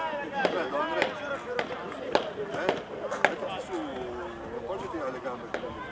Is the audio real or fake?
real